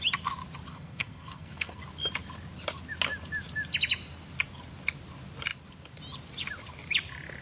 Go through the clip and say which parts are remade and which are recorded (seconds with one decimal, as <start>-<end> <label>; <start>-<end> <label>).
0.0-0.7 recorded; 0.7-1.8 remade; 1.8-7.4 recorded